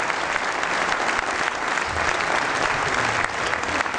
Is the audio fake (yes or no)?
no